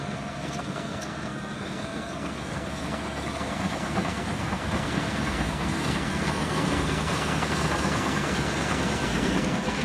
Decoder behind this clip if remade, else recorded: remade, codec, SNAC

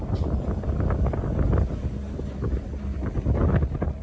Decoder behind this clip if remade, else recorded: recorded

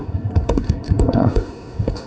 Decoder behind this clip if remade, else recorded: remade, codec, SNAC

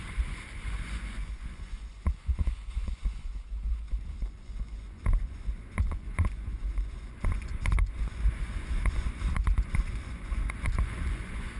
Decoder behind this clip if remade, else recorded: remade, vocoder, Vocos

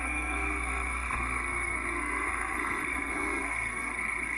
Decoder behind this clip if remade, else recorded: remade, codec, SNAC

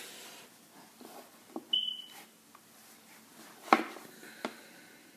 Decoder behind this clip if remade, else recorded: recorded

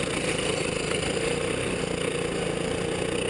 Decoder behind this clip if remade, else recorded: recorded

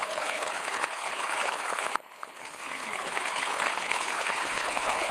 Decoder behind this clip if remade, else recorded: remade, codec, HILCodec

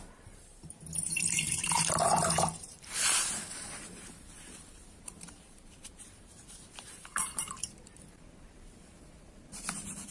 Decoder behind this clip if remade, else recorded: remade, vocoder, BigVGAN v2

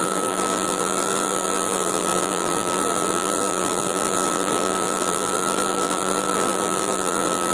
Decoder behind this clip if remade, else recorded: remade, vocoder, BigVGAN v2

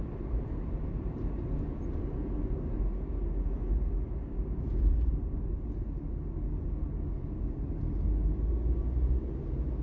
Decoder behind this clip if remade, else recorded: recorded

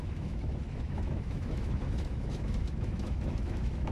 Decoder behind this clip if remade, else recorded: remade, autoencoder, DAC-VAE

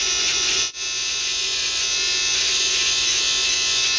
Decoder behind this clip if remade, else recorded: remade, vocoder, Vocos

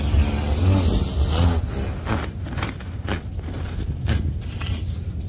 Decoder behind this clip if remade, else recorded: recorded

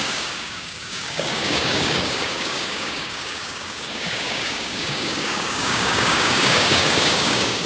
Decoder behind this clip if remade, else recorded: remade, codec, DAC